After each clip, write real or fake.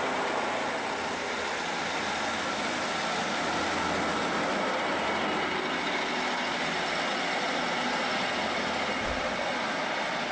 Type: real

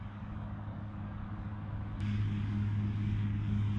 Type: fake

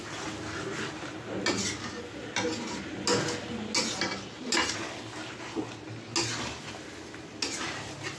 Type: real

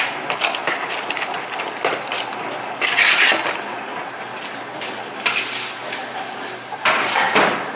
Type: real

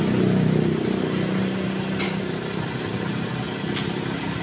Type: real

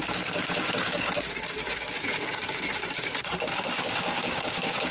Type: fake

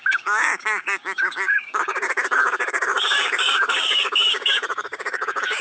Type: fake